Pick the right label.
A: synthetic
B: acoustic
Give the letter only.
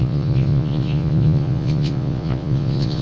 A